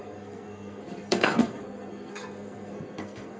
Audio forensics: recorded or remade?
remade